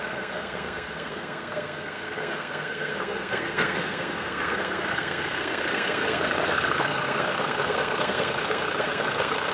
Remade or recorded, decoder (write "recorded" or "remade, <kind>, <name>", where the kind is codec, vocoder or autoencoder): remade, codec, SNAC